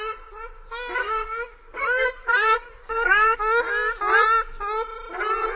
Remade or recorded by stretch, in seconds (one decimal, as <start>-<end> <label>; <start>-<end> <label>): 0.0-1.0 recorded; 1.0-3.4 remade; 3.4-5.6 recorded